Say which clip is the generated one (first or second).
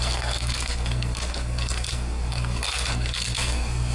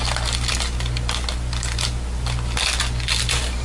first